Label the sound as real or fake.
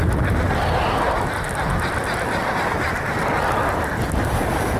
real